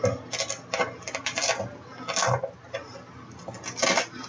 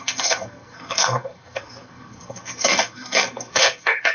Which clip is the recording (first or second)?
first